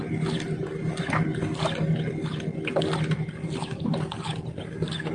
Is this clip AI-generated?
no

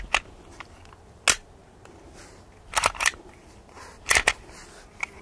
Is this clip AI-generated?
no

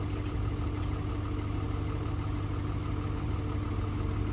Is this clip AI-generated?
no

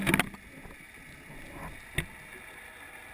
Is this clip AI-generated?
no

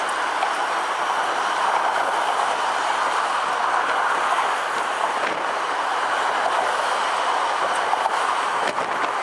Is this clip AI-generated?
no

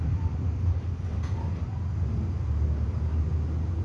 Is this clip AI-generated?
no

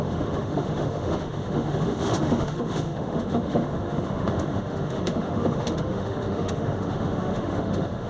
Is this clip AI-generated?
yes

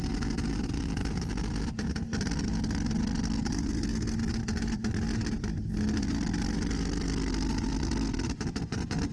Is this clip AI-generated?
no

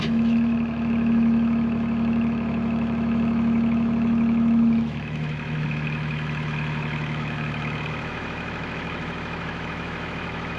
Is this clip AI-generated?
yes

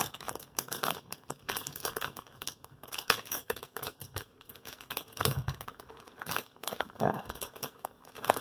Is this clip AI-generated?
yes